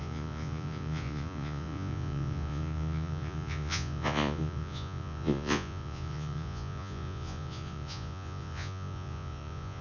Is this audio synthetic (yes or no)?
yes